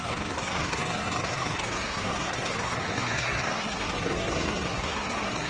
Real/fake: fake